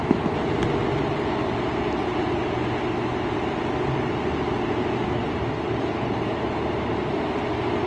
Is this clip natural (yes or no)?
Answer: yes